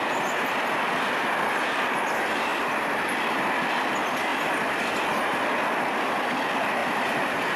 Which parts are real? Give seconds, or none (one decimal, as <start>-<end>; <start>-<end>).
0.0-2.5; 3.5-6.8